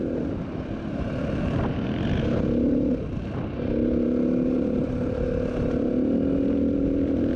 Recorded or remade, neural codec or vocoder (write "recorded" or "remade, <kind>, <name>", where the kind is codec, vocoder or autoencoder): recorded